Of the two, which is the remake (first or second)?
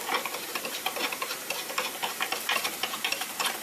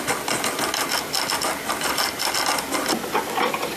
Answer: first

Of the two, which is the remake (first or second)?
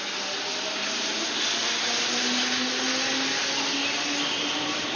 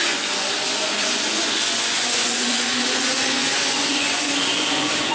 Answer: second